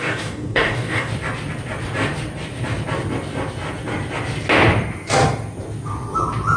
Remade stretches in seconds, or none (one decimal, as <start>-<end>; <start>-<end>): 0.0-1.1